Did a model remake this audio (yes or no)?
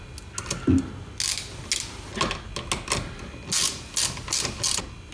no